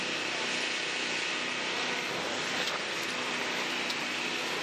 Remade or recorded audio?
recorded